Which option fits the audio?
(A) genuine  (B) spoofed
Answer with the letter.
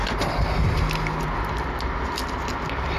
A